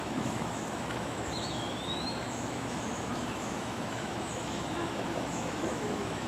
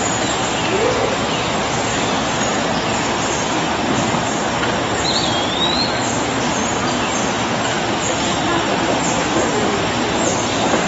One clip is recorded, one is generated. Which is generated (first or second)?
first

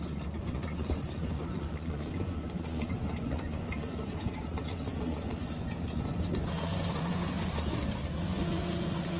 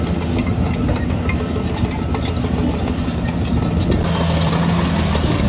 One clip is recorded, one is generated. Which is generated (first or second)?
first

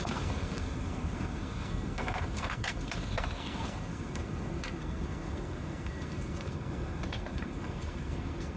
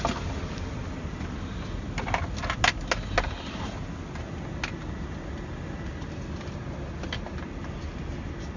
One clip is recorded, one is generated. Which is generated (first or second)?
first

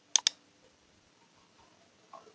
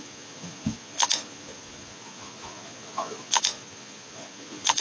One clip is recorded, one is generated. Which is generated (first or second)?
second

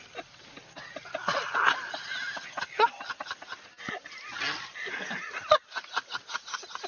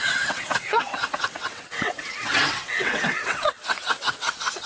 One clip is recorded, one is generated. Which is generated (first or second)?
second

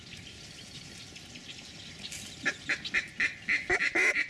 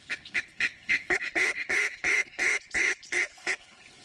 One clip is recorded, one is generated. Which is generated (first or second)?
second